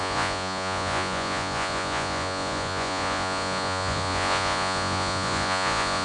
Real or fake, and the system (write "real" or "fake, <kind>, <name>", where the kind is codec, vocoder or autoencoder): fake, vocoder, Vocos